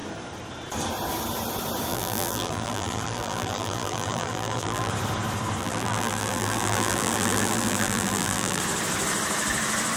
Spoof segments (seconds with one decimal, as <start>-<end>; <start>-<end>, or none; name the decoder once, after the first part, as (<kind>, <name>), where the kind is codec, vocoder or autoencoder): 1.9-4.9 (vocoder, BigVGAN v2); 5.6-8.6